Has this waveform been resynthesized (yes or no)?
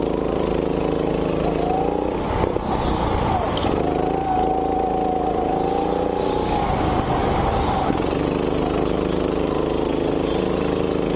no